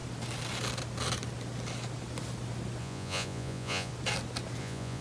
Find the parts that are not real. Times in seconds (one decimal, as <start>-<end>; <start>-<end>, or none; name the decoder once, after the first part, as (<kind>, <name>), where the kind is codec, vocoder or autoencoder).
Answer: 2.8-3.9 (vocoder, Vocos); 4.6-5.0